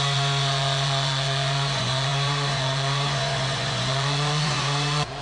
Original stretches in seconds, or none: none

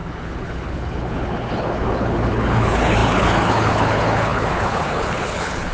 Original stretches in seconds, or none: none

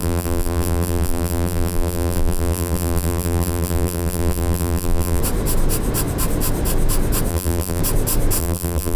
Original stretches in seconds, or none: 5.2-7.3; 7.8-8.4